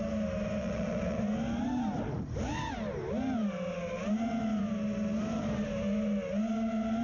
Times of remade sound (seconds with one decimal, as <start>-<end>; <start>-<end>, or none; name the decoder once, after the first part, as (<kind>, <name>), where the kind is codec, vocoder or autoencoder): 0.6-1.2 (vocoder, Vocos)